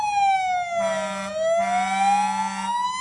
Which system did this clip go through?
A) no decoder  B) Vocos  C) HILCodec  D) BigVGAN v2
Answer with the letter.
A